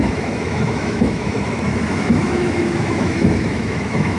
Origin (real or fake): fake